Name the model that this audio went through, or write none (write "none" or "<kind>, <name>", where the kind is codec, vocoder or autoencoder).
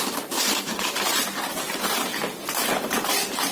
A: vocoder, BigVGAN v2